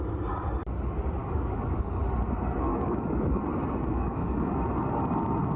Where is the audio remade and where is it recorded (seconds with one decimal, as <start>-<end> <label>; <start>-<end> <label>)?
0.0-1.2 recorded; 1.2-2.0 remade; 2.0-2.7 recorded; 2.7-3.4 remade; 3.4-3.9 recorded; 3.9-4.5 remade; 4.5-5.6 recorded